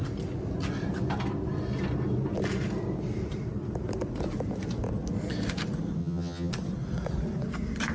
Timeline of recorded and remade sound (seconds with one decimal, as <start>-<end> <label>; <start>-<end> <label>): 0.0-6.0 recorded; 6.0-6.5 remade; 6.5-7.9 recorded